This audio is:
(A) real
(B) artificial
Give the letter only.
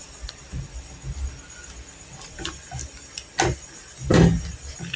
A